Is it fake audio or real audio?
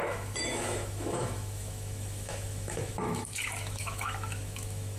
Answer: fake